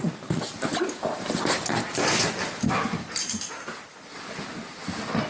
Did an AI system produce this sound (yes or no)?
no